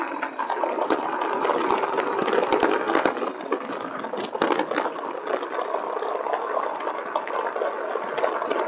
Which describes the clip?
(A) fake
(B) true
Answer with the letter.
B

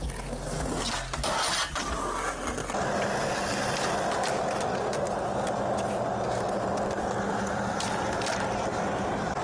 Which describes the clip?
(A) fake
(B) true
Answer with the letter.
B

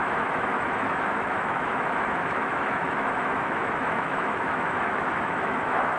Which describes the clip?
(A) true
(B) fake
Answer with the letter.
B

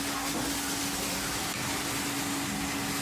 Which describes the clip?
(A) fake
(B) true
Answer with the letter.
B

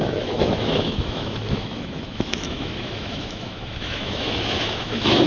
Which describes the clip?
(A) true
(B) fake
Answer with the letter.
B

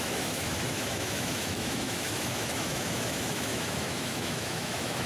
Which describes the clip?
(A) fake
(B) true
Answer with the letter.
A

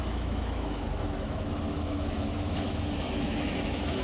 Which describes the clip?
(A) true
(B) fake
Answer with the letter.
B